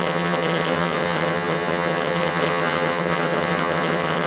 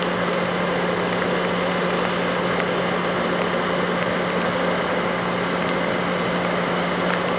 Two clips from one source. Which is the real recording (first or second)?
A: second